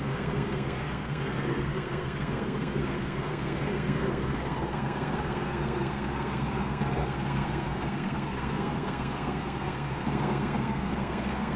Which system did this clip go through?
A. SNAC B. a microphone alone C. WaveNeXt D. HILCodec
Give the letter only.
A